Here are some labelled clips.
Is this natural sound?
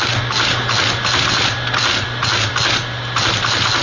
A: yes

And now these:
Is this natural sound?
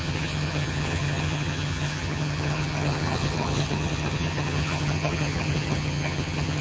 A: no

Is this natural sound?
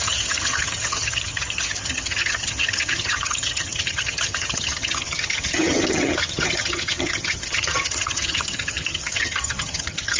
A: no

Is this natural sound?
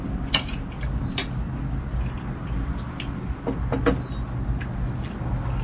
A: yes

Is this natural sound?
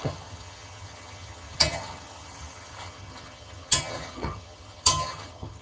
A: no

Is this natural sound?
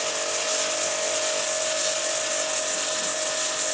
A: yes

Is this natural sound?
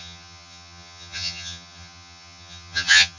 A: no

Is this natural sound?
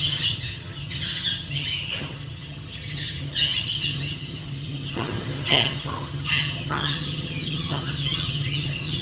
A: no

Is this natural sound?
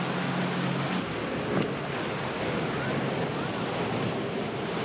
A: yes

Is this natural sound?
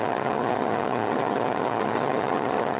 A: no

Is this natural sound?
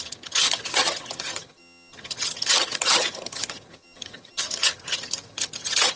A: no